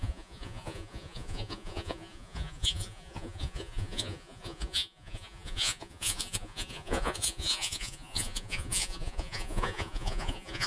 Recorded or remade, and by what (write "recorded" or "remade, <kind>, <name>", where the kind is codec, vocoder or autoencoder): remade, vocoder, Vocos